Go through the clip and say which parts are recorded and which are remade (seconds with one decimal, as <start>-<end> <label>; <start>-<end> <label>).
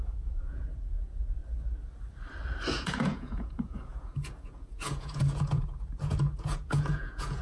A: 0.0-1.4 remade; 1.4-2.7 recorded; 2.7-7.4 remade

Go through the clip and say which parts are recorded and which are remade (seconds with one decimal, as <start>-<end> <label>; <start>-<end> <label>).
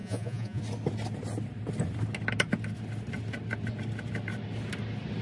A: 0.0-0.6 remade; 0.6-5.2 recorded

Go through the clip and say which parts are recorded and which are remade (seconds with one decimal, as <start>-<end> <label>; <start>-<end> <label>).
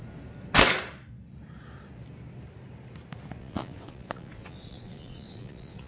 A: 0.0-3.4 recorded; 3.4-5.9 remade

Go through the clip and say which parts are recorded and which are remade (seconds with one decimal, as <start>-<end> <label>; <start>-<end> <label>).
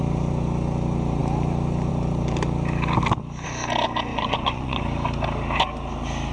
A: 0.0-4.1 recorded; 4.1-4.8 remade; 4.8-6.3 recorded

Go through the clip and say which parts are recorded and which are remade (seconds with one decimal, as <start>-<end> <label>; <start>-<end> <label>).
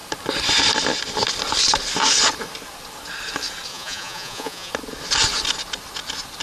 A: 0.0-3.7 recorded; 3.7-4.7 remade; 4.7-6.4 recorded